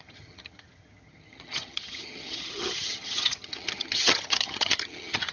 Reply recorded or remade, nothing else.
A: remade